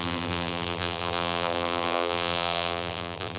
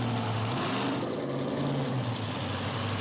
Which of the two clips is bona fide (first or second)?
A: second